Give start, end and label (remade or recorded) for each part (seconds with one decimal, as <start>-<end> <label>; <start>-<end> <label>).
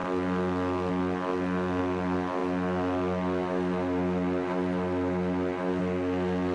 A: 0.0-6.5 recorded